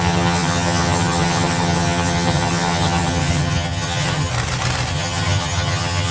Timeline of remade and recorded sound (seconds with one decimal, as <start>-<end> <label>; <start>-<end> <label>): 0.0-4.3 remade; 4.3-4.9 recorded; 4.9-6.1 remade